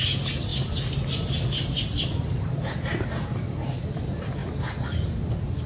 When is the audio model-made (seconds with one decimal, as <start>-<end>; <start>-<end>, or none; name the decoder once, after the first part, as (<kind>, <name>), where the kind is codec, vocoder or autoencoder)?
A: none